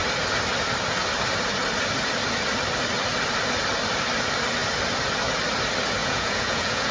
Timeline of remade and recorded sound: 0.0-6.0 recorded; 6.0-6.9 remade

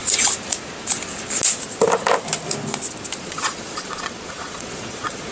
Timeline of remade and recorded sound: 0.0-3.2 recorded; 3.2-5.3 remade

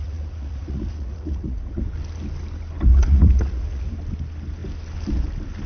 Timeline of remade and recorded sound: 0.0-1.8 remade; 1.8-2.9 recorded; 2.9-3.8 remade; 3.8-5.7 recorded

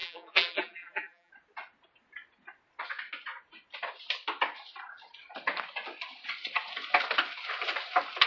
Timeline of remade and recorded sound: 0.0-1.3 remade; 1.3-8.3 recorded